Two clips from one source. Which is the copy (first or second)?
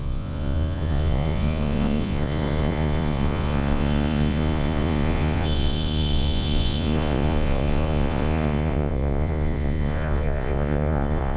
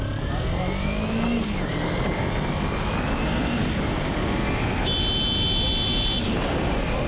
first